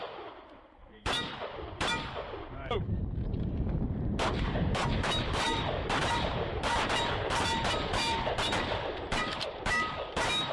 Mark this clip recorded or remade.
remade